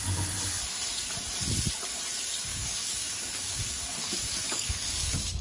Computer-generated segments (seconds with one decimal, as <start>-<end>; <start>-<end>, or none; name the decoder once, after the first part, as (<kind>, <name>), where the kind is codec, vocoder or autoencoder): 2.5-5.4 (codec, DAC)